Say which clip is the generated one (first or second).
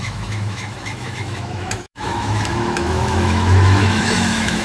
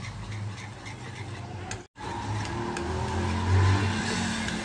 first